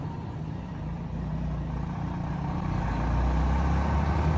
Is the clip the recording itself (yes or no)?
yes